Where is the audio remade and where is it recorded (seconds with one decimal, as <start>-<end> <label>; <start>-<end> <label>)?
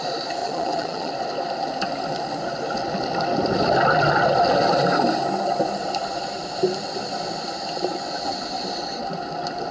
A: 0.0-0.4 recorded; 0.4-1.1 remade; 1.1-9.7 recorded